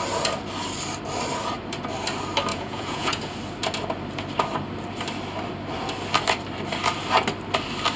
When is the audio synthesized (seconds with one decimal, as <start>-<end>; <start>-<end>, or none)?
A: 2.5-3.2